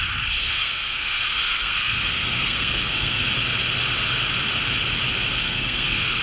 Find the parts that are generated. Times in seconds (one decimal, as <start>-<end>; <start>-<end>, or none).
0.4-3.3; 5.4-6.2